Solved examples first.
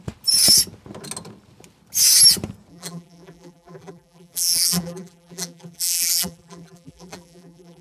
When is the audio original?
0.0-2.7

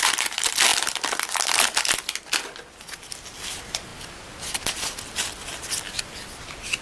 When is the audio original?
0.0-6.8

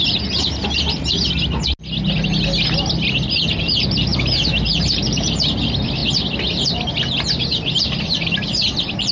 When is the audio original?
0.6-3.6; 6.0-7.4

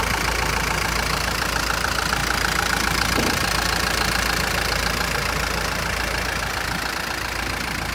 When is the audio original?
0.0-7.9